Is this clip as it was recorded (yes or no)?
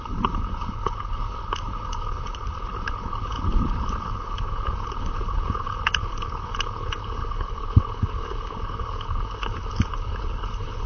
no